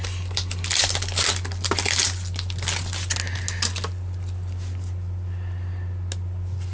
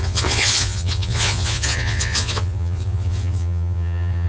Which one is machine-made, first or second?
second